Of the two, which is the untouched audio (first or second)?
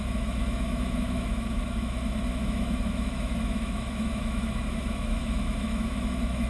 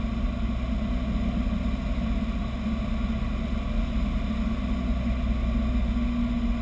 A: second